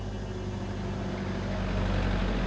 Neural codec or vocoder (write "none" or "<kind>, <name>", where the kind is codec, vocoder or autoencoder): none